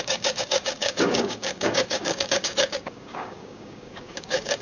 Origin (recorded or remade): remade